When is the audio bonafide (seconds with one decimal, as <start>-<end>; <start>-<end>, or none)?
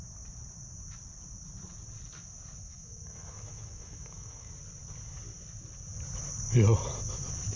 0.0-2.7; 4.5-7.6